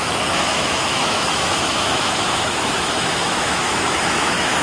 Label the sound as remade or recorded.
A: remade